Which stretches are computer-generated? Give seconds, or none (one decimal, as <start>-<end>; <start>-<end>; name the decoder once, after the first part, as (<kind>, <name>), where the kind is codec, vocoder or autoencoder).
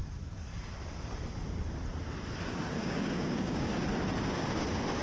2.8-3.7 (codec, DAC)